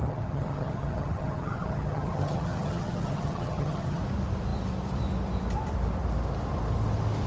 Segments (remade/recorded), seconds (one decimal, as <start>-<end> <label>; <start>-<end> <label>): 0.0-4.0 remade; 4.0-7.3 recorded